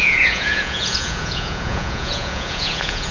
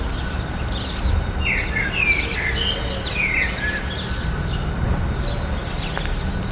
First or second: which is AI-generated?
first